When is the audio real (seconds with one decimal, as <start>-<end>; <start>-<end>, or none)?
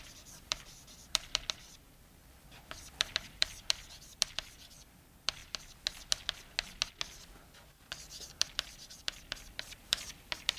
5.4-8.2